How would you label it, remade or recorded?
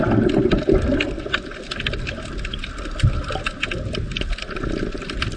recorded